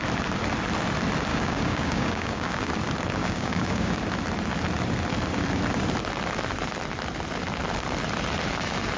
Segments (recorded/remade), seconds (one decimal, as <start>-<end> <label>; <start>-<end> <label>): 0.0-1.3 recorded; 1.3-2.7 remade; 2.7-3.2 recorded; 3.2-3.9 remade; 3.9-9.0 recorded